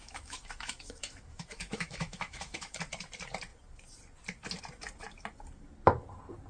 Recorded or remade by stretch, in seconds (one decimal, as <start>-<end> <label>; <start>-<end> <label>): 0.0-2.8 remade; 2.8-6.5 recorded